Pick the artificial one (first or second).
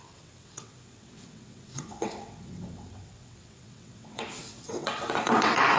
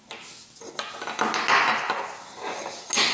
first